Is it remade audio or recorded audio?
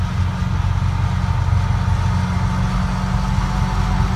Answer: recorded